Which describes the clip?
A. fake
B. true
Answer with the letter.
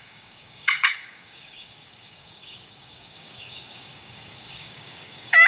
A